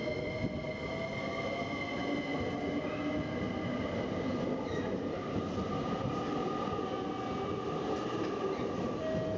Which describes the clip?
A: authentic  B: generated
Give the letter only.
A